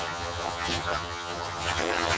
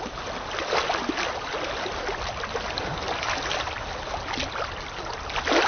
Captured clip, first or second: second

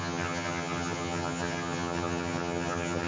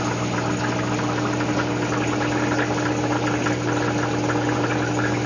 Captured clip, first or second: second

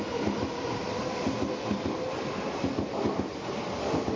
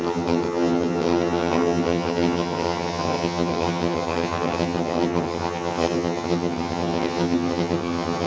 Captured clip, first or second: first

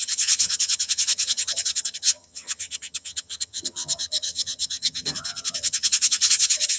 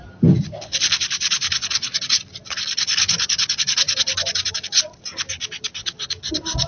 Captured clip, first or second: second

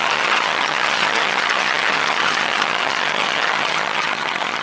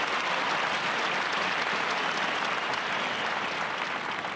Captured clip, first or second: second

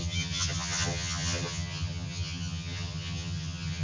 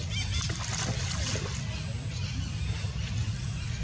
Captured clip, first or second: second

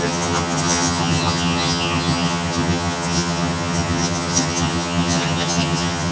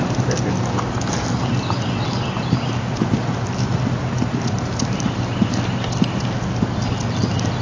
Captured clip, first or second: second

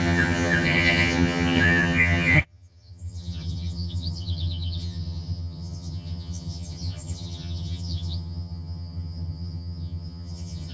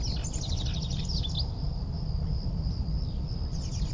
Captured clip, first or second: second